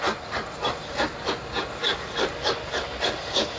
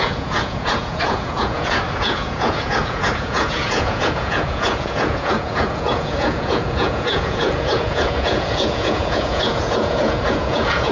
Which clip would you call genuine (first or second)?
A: first